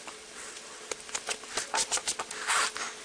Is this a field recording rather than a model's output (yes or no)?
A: yes